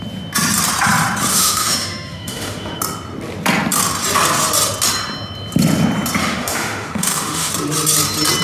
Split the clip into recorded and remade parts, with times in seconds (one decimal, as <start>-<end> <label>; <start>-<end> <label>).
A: 0.0-1.3 recorded; 1.3-2.8 remade; 2.8-6.2 recorded; 6.2-7.5 remade; 7.5-8.4 recorded